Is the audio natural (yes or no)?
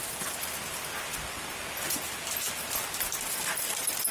yes